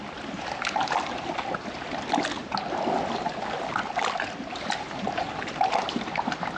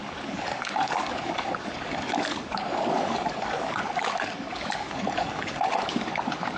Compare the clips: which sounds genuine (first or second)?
first